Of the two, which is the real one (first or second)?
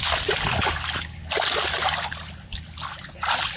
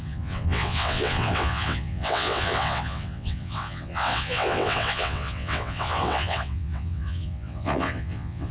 first